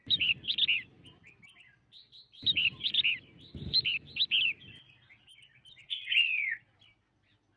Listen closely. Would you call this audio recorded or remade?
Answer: recorded